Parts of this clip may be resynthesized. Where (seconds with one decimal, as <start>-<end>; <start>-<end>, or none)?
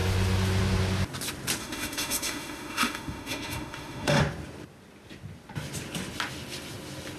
1.6-4.2